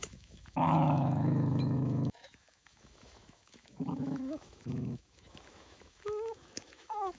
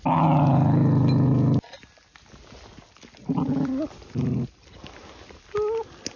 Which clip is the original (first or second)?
second